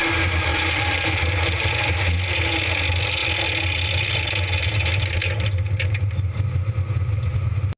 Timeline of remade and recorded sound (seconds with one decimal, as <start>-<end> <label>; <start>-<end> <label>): 0.0-0.5 recorded; 0.5-1.7 remade; 1.7-7.8 recorded